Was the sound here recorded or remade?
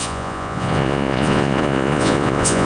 remade